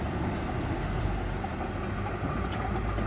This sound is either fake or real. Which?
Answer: real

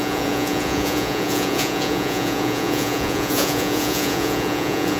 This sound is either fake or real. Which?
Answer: fake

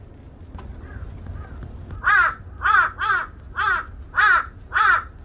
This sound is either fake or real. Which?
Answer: real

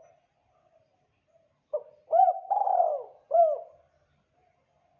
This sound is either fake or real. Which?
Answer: real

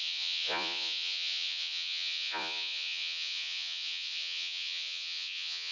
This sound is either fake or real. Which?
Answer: fake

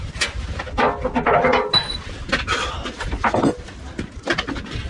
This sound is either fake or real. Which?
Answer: real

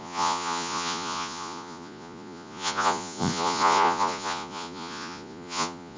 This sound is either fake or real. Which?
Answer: fake